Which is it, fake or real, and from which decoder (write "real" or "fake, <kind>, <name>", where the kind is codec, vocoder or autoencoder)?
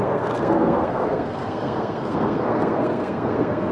fake, codec, SNAC